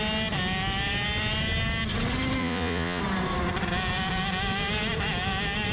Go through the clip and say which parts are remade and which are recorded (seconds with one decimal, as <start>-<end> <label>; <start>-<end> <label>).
0.0-2.4 recorded; 2.4-3.0 remade; 3.0-5.7 recorded

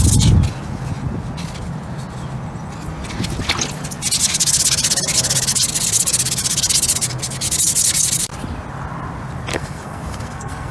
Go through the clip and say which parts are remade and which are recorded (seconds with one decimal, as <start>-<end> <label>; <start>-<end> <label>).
0.0-9.5 recorded; 9.5-10.7 remade

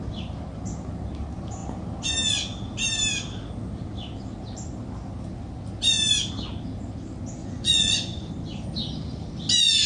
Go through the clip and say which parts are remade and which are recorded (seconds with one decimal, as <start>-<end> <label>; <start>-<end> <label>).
0.0-7.4 recorded; 7.4-8.3 remade; 8.3-9.9 recorded

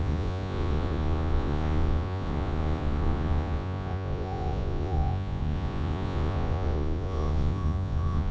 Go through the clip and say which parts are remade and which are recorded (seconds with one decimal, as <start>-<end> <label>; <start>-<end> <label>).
0.0-8.3 remade

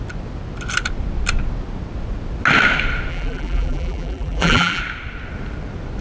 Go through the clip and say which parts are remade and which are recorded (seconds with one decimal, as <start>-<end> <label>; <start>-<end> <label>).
0.0-3.1 recorded; 3.1-4.8 remade; 4.8-6.0 recorded